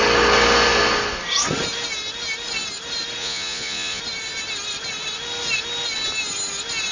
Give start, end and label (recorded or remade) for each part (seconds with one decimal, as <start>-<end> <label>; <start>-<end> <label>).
0.0-3.2 recorded; 3.2-4.0 remade; 4.0-6.9 recorded